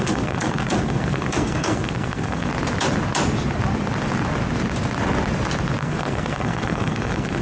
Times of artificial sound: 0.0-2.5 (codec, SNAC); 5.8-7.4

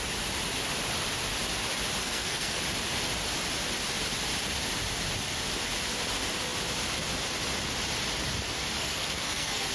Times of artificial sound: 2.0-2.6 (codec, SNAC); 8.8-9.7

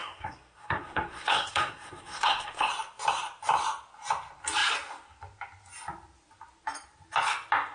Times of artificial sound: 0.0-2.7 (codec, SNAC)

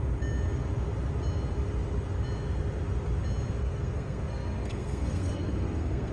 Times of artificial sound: 3.6-6.1 (codec, SNAC)

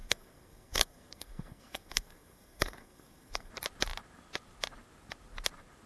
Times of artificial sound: 0.0-3.5 (codec, SNAC)

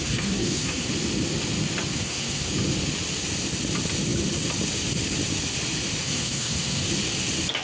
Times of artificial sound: 0.0-0.9 (codec, SNAC); 1.9-2.5; 6.0-6.9

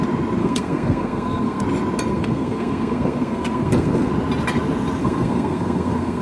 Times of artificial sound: 0.4-1.6 (codec, SNAC); 2.1-4.1; 5.0-6.2

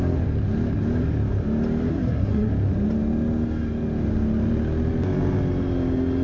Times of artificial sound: 1.9-2.5 (codec, SNAC)